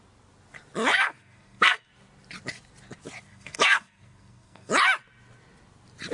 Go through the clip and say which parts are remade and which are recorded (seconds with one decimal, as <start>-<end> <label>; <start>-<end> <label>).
0.0-0.9 recorded; 0.9-1.9 remade; 1.9-3.3 recorded; 3.3-4.7 remade; 4.7-6.1 recorded